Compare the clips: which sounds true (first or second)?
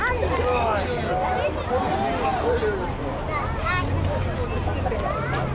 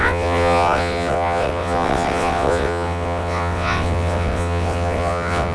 first